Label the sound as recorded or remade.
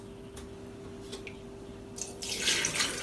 recorded